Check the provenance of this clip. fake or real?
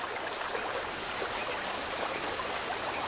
real